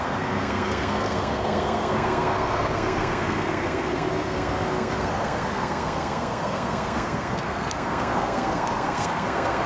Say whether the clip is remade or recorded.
remade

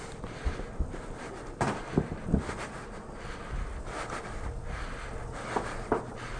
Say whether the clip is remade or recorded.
recorded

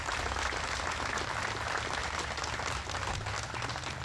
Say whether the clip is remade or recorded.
recorded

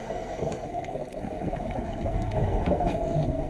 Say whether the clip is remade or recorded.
remade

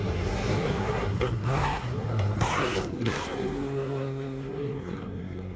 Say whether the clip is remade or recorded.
remade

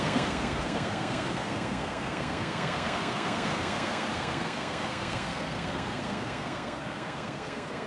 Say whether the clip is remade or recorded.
remade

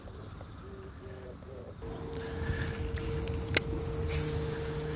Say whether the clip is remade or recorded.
recorded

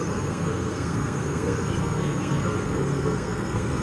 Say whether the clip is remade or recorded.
remade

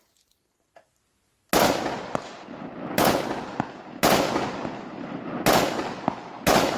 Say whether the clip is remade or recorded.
recorded